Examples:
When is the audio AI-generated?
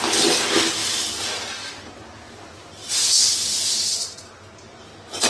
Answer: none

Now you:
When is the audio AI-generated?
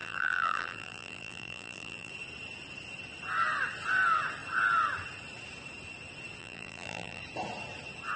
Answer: 0.0-2.1; 6.4-7.2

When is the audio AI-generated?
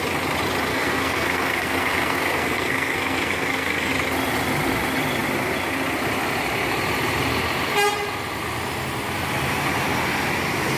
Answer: 0.7-3.9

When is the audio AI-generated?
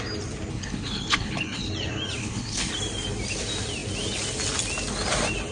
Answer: 0.5-1.7; 2.2-2.7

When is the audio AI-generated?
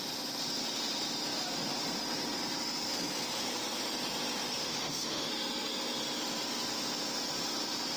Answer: 4.6-5.3